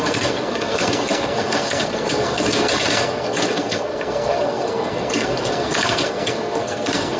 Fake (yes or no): yes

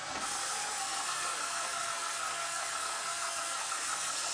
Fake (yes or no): yes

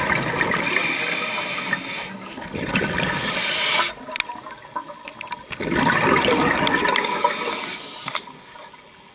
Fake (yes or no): no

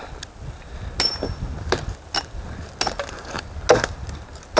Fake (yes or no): no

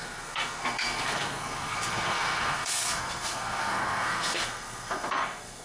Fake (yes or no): yes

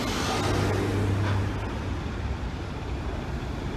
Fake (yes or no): no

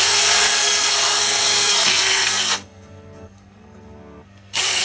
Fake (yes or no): yes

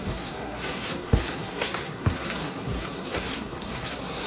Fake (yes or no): yes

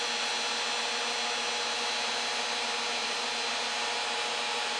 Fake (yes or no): no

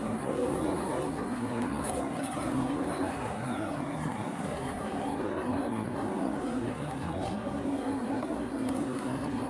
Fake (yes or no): yes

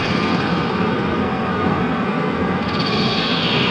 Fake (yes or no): yes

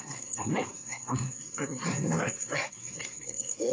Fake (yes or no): yes